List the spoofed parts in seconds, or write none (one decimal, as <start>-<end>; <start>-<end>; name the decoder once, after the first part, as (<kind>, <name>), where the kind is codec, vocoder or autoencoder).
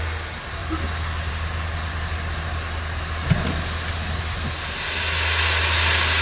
none